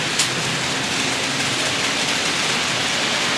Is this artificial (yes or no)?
no